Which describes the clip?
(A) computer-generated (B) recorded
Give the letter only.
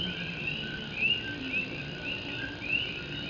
B